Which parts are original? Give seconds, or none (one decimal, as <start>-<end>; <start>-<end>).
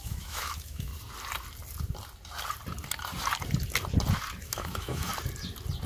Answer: 0.9-4.4; 5.1-5.9